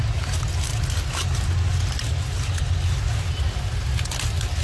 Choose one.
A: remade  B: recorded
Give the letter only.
B